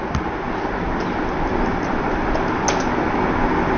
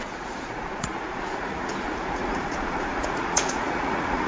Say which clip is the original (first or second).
first